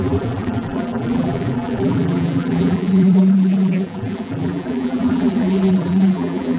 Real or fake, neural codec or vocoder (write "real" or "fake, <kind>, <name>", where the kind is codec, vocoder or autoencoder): fake, vocoder, BigVGAN v2